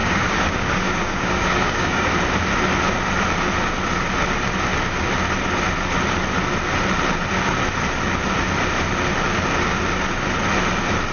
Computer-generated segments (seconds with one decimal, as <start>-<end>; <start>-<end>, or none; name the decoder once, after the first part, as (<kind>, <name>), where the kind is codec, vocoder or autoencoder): 0.0-2.1 (codec, DAC)